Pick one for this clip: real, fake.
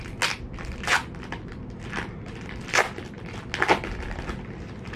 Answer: real